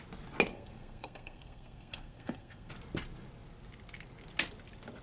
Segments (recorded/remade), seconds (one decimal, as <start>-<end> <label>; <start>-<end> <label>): 0.0-0.5 recorded; 0.5-2.7 remade; 2.7-5.0 recorded